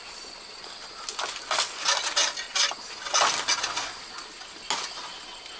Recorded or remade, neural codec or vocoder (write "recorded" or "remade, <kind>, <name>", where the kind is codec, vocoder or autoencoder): recorded